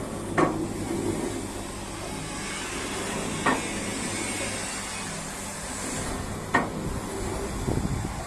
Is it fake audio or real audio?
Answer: real